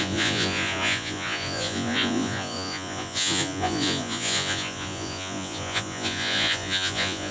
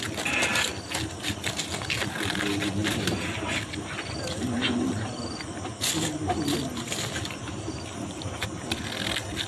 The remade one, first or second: first